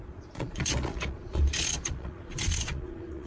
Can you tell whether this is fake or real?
fake